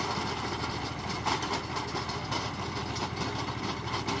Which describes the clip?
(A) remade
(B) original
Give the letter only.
A